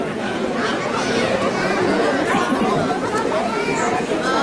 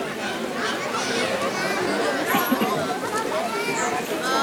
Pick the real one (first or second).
second